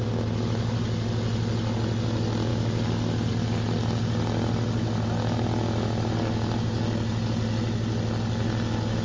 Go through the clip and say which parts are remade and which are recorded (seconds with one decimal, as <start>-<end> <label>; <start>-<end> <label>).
0.0-9.0 recorded